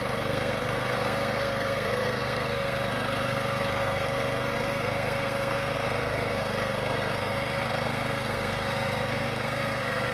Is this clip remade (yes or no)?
yes